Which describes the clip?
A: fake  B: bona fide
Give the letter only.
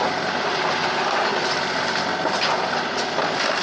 B